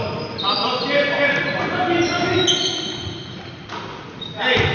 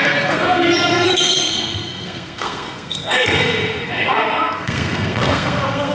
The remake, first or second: second